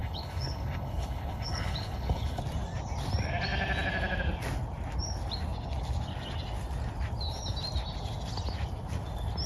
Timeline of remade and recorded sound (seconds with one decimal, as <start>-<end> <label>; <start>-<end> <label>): 0.0-2.4 remade; 2.4-9.5 recorded